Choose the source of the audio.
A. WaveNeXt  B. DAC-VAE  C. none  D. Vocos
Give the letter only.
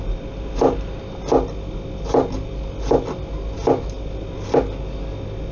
C